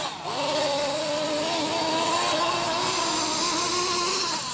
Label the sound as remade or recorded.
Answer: recorded